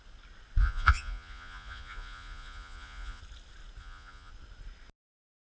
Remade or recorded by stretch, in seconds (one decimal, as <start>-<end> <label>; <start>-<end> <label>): 0.0-0.6 recorded; 0.6-3.2 remade; 3.2-3.8 recorded; 3.8-4.3 remade; 4.3-5.4 recorded